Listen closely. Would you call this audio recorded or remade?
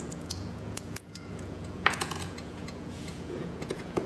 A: remade